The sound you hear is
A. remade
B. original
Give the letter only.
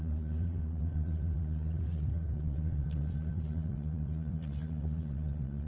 A